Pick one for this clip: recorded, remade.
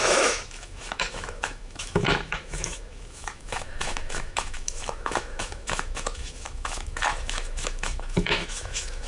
remade